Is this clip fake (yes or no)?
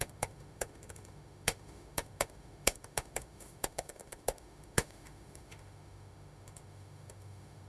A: yes